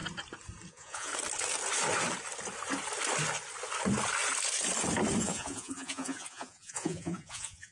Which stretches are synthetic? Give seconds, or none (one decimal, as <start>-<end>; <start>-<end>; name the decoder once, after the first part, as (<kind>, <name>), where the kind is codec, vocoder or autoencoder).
0.7-1.1 (vocoder, Vocos); 5.2-7.7